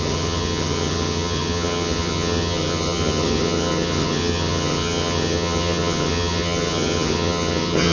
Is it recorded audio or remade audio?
remade